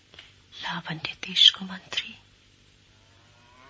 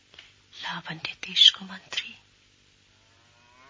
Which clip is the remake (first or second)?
first